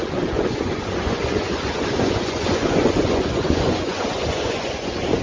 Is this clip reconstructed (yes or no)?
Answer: yes